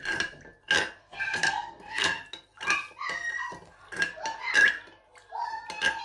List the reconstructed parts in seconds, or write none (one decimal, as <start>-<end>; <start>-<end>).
1.0-2.2